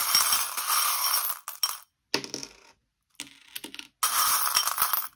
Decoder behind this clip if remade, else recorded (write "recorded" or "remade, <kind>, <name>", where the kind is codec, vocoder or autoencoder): recorded